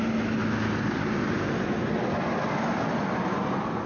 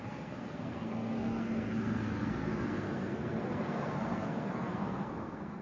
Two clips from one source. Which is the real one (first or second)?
first